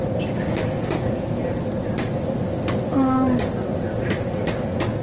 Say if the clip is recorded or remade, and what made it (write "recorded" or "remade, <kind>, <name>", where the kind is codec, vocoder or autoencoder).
recorded